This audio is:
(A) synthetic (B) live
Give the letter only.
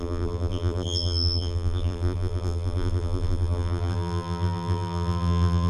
A